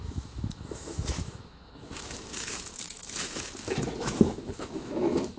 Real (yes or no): no